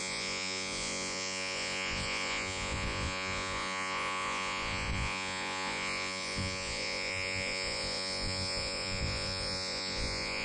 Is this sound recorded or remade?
remade